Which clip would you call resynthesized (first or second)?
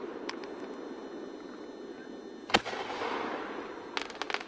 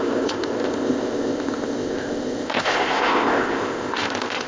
second